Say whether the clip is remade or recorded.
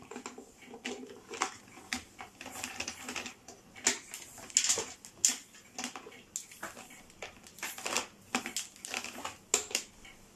recorded